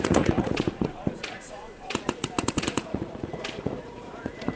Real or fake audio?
fake